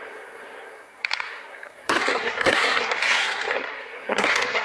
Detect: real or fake fake